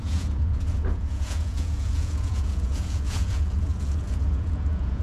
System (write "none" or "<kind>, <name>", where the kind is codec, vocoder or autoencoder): vocoder, Vocos